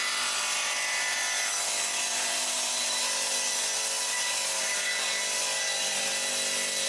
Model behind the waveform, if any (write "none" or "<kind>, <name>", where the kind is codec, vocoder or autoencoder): none